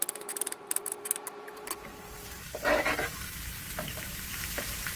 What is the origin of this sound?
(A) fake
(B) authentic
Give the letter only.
A